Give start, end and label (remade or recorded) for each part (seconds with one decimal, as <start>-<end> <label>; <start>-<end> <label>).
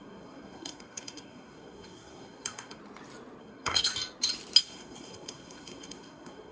0.0-2.8 remade; 2.8-3.4 recorded; 3.4-3.9 remade; 3.9-4.6 recorded; 4.6-6.5 remade